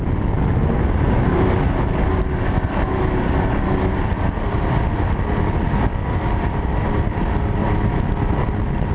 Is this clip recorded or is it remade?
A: recorded